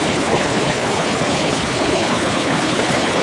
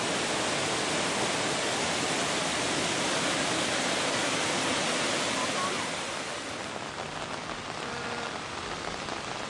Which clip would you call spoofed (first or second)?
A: first